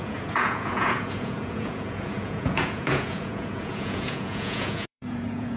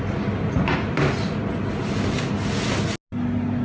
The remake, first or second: first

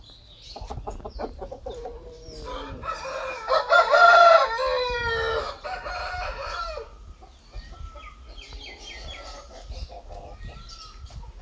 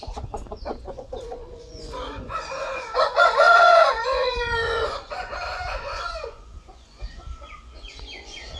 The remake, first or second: second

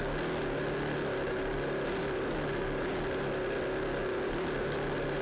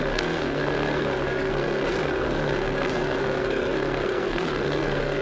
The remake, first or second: second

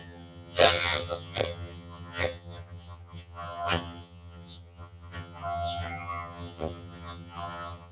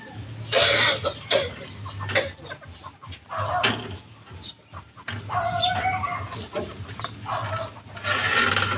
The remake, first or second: first